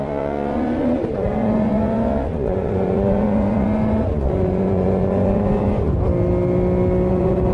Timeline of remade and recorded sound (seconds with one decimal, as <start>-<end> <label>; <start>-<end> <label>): 0.0-5.9 remade; 5.9-7.1 recorded; 7.1-7.5 remade